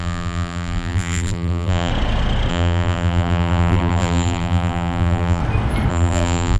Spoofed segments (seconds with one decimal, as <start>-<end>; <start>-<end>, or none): 0.0-1.9; 2.5-5.4; 5.9-6.6